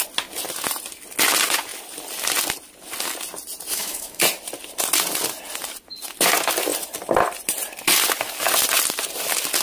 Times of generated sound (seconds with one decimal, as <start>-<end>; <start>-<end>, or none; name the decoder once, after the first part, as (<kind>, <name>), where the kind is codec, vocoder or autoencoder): 3.7-4.2 (autoencoder, DAC-VAE)